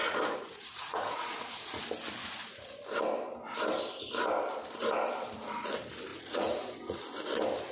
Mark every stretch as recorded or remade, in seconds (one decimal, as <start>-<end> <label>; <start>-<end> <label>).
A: 0.0-1.8 remade; 1.8-2.2 recorded; 2.2-2.8 remade; 2.8-6.1 recorded; 6.1-7.0 remade; 7.0-7.7 recorded